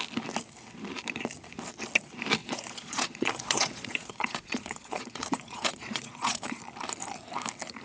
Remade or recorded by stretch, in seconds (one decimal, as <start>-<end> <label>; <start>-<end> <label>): 0.0-2.4 recorded; 2.4-6.6 remade; 6.6-7.8 recorded